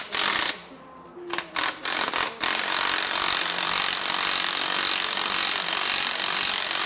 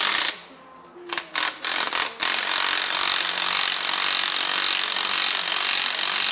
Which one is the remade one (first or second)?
first